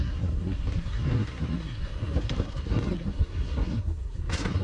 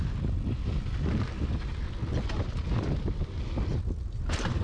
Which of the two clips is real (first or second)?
second